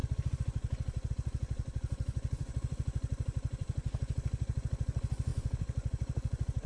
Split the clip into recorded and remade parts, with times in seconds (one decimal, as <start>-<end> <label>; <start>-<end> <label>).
0.0-6.7 remade

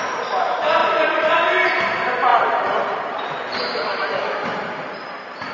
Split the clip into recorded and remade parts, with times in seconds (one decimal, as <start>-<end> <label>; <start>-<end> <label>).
0.0-0.8 recorded; 0.8-1.7 remade; 1.7-2.3 recorded; 2.3-3.6 remade; 3.6-4.5 recorded; 4.5-5.5 remade